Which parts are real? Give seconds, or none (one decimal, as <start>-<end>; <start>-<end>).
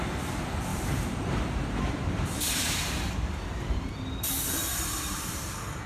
0.0-0.7; 3.9-4.7; 5.4-5.9